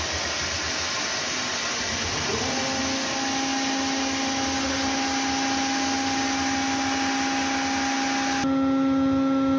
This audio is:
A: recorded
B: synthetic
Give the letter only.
A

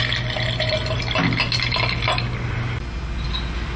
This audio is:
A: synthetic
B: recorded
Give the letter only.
B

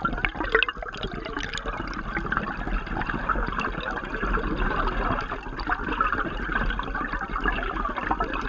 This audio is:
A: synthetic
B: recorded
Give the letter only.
B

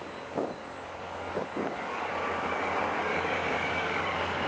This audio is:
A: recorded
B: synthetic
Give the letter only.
B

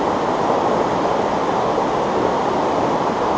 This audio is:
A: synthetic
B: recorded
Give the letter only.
B